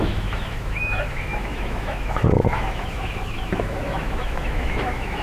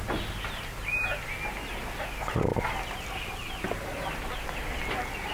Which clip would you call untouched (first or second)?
second